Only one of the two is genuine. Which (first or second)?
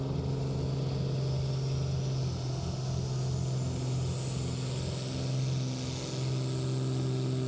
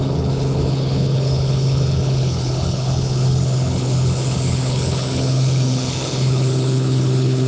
first